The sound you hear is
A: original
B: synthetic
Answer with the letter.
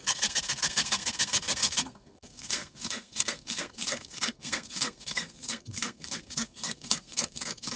B